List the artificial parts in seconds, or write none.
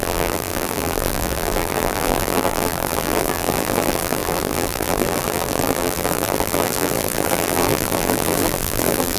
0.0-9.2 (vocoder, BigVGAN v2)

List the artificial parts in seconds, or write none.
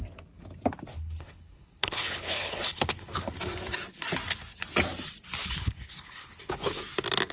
0.9-3.3 (codec, HILCodec); 5.4-6.8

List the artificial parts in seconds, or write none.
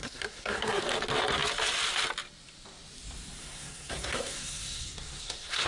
0.0-0.8 (codec, SNAC); 3.4-5.7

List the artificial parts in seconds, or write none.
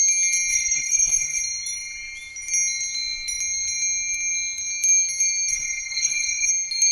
0.5-1.4 (codec, SNAC); 5.5-6.5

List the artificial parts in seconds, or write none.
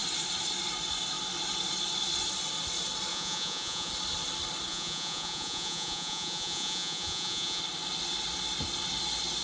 3.1-3.9 (vocoder, Vocos); 4.7-7.6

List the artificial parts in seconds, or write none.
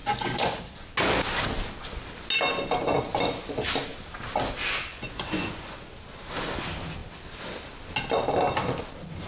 0.0-0.6 (vocoder, Vocos); 4.9-5.7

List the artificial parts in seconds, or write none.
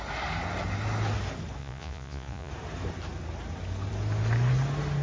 1.6-2.5 (vocoder, Vocos)